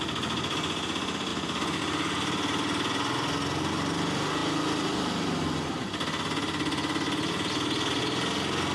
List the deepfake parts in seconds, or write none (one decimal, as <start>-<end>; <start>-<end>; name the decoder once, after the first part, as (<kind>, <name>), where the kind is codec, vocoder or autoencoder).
1.3-1.8 (vocoder, BigVGAN v2)